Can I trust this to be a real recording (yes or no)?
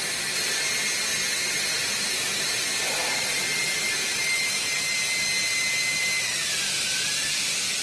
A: yes